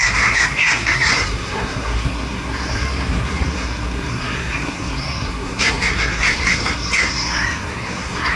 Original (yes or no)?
no